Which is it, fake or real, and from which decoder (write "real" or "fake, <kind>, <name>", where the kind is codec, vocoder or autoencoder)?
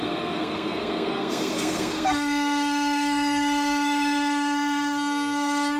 fake, codec, SNAC